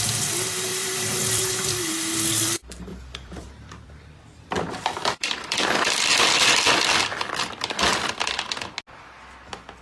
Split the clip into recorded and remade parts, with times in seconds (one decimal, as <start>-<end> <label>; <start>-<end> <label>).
0.0-0.7 recorded; 0.7-1.9 remade; 1.9-2.9 recorded; 2.9-7.0 remade; 7.0-9.8 recorded